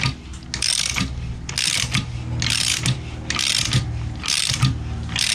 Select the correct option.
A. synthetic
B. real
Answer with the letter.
B